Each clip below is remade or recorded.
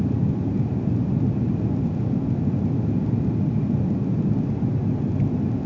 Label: recorded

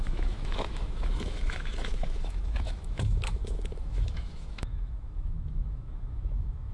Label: remade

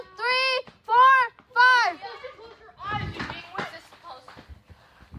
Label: recorded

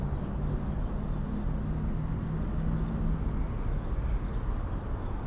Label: recorded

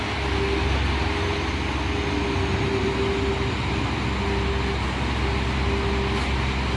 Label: recorded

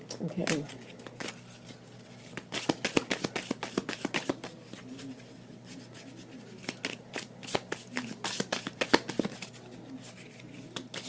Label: recorded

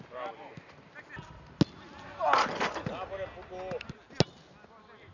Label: recorded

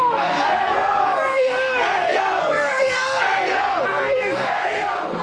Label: remade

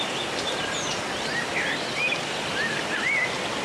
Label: recorded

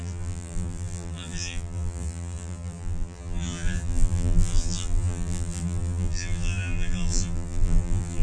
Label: remade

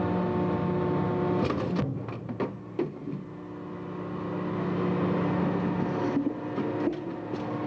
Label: recorded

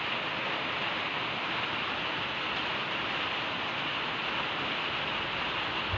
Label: recorded